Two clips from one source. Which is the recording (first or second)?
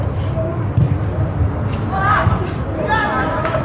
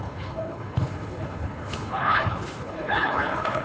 first